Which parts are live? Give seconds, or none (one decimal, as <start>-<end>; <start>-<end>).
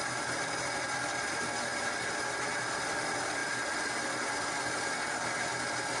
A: 0.0-6.0